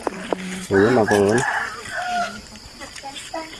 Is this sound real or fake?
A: fake